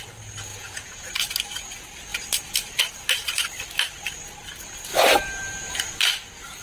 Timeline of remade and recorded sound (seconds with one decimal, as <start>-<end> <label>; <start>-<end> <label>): 0.0-0.5 recorded; 0.5-1.1 remade; 1.1-6.6 recorded